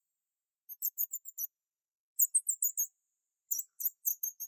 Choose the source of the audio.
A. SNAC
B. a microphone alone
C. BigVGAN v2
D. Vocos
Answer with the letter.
B